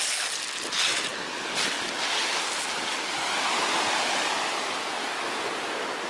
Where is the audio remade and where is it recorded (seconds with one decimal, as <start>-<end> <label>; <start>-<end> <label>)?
0.0-6.1 recorded